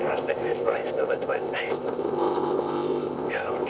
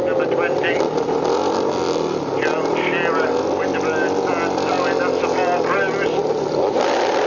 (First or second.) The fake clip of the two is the first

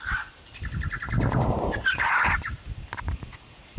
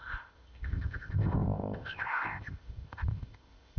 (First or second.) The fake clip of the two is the second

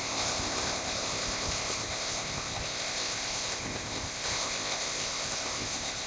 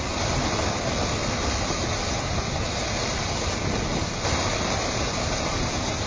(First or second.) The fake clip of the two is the first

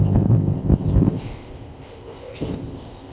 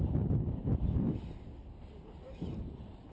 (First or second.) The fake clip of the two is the first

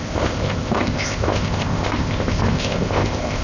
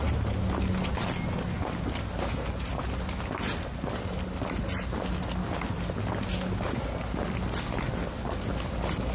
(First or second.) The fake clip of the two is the first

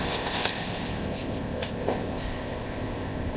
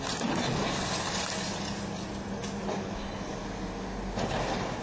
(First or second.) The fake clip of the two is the first